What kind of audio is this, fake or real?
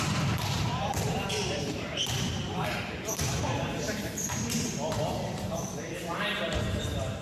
fake